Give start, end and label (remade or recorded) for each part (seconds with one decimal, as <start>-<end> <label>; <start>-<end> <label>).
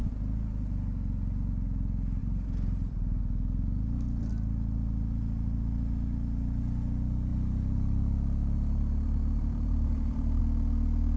0.0-2.2 recorded; 2.2-3.2 remade; 3.2-7.3 recorded; 7.3-10.4 remade; 10.4-11.2 recorded